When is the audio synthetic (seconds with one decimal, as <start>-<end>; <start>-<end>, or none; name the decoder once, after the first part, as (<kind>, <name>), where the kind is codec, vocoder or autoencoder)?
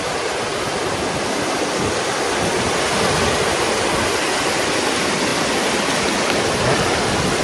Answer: none